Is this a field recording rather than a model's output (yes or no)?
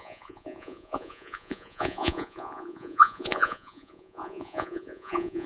no